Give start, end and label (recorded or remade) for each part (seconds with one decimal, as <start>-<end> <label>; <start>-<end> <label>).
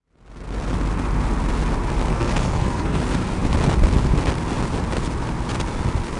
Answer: 0.0-2.1 recorded; 2.1-3.0 remade; 3.0-6.2 recorded